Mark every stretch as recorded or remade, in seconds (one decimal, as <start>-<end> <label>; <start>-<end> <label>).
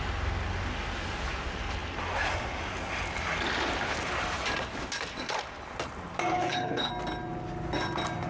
0.0-6.3 recorded; 6.3-6.9 remade; 6.9-8.3 recorded